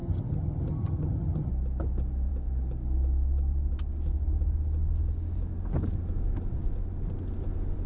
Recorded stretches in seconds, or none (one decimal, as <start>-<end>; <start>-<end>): 1.5-7.9

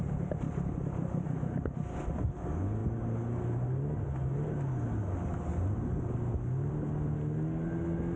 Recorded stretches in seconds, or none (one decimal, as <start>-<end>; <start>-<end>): 0.0-8.2

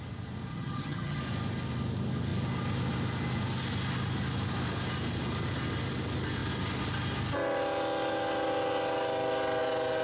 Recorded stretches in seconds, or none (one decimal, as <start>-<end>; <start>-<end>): 0.0-0.5; 1.2-10.0

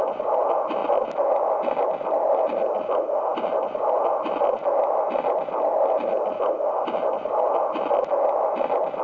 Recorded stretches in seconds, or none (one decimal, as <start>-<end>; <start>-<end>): 0.0-9.0

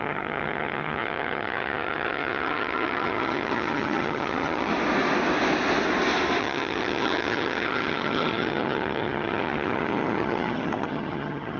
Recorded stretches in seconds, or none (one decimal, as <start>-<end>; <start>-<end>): 4.7-6.4

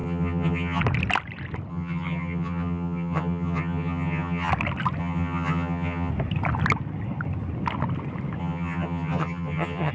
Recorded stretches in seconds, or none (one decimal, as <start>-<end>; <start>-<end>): 0.8-1.7; 4.5-5.0; 6.1-8.4